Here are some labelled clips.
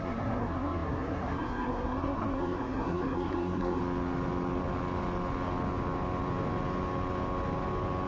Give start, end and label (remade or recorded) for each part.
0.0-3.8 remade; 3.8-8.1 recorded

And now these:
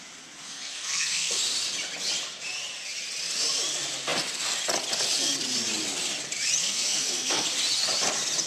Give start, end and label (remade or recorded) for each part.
0.0-0.4 recorded; 0.4-1.4 remade; 1.4-6.6 recorded; 6.6-7.5 remade; 7.5-8.5 recorded

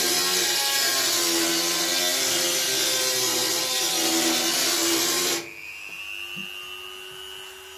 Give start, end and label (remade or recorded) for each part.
0.0-7.8 recorded

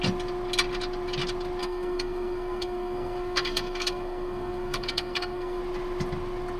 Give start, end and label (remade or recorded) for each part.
0.0-1.6 recorded; 1.6-5.6 remade; 5.6-6.6 recorded

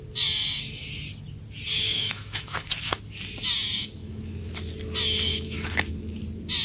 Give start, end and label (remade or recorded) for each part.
0.0-1.9 recorded; 1.9-3.0 remade; 3.0-4.0 recorded; 4.0-4.5 remade; 4.5-5.3 recorded; 5.3-5.9 remade; 5.9-6.6 recorded